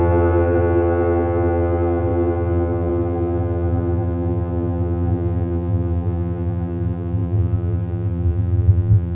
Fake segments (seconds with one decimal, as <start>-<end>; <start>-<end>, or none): 0.0-9.2